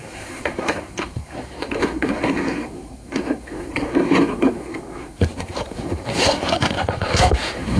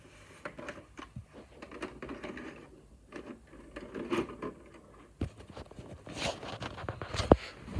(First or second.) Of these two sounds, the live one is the second